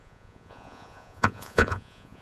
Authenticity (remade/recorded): remade